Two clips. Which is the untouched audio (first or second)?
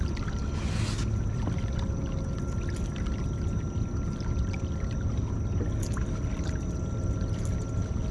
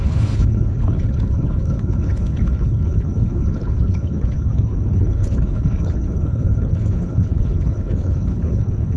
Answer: first